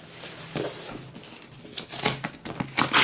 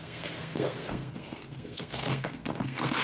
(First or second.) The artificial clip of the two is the second